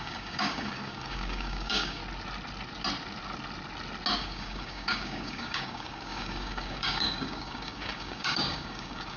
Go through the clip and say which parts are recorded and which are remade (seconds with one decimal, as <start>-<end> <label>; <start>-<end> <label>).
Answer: 0.0-2.0 remade; 2.0-4.2 recorded; 4.2-9.2 remade